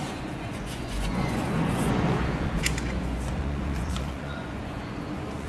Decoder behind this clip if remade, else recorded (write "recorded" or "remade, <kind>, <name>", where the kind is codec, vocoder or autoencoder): remade, vocoder, Vocos